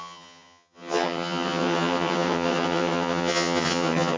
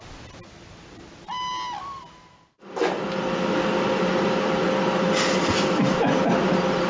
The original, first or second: second